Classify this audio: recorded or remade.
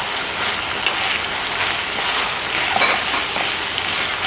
recorded